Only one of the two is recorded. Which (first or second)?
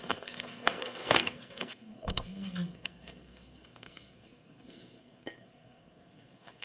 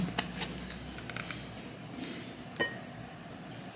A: second